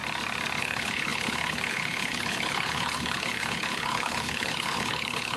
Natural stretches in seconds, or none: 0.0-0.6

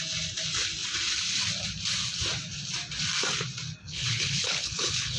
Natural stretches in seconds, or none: 0.0-3.8

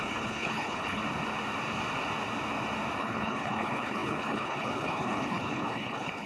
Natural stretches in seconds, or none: 1.0-3.0

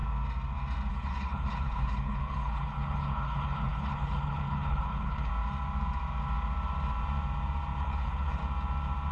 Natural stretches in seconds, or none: 0.0-0.9; 5.3-7.8; 8.4-9.1